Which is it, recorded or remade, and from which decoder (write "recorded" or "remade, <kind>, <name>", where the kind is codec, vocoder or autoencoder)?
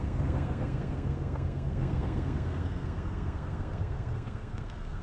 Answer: remade, codec, SNAC